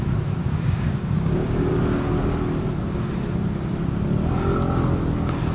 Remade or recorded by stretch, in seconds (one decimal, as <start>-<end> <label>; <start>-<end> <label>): 0.0-0.4 recorded; 0.4-1.7 remade; 1.7-5.5 recorded